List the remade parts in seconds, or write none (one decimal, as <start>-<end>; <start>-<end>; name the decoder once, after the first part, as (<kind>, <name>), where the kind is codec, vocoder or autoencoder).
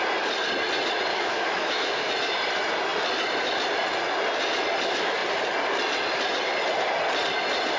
1.1-2.1 (autoencoder, DAC-VAE)